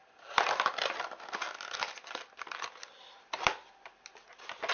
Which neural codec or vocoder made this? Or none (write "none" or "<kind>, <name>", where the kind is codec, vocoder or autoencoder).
none